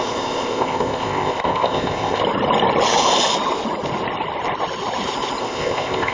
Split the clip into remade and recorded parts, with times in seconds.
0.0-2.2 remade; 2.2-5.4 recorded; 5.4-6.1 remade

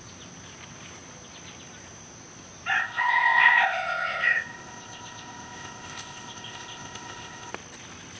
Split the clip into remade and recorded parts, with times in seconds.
0.0-2.8 recorded; 2.8-7.5 remade; 7.5-8.2 recorded

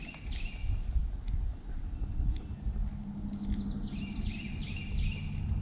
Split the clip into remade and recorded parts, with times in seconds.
0.0-5.6 recorded

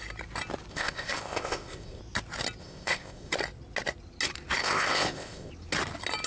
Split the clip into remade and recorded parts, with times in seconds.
0.0-0.7 recorded; 0.7-2.0 remade; 2.0-2.6 recorded; 2.6-3.3 remade; 3.3-4.6 recorded; 4.6-5.5 remade; 5.5-6.3 recorded

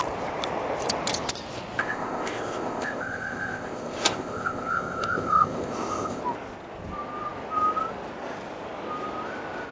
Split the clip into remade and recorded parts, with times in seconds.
0.0-1.8 recorded; 1.8-6.2 remade; 6.2-9.7 recorded

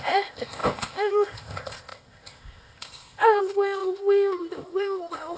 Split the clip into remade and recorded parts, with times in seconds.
0.0-5.4 remade

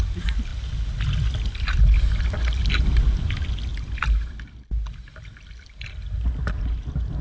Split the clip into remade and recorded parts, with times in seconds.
0.0-7.2 recorded